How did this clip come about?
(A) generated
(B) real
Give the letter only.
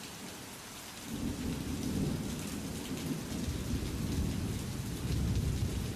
B